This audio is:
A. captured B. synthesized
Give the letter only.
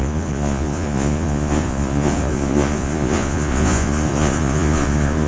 B